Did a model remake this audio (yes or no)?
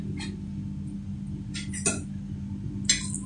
no